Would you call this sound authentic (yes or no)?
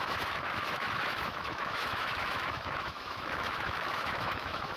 no